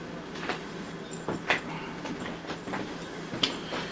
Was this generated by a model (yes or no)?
no